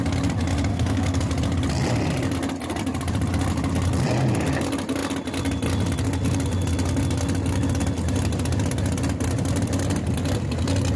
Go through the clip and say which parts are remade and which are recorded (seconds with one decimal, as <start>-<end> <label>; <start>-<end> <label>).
0.0-0.7 recorded; 0.7-1.3 remade; 1.3-11.0 recorded